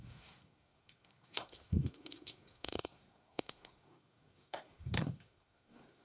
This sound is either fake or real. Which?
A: fake